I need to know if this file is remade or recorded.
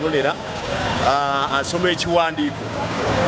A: remade